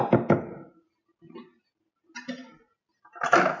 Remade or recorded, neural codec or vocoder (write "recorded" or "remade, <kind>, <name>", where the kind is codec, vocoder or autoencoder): recorded